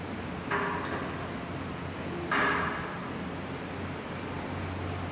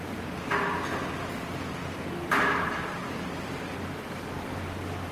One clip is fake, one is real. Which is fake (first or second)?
second